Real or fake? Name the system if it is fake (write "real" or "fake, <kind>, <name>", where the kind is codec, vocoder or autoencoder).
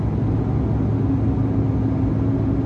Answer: real